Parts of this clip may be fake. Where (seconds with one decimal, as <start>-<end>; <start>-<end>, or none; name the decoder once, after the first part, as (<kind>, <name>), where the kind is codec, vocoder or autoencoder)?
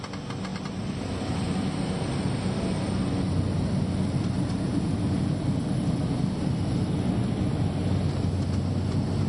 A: 0.5-1.2 (vocoder, BigVGAN v2)